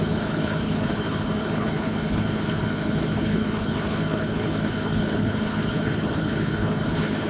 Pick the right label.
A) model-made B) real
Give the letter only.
A